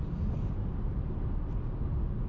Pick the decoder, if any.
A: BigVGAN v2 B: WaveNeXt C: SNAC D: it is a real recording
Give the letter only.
D